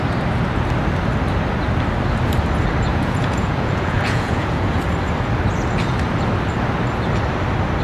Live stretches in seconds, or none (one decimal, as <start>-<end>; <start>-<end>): 0.0-2.9; 4.8-7.8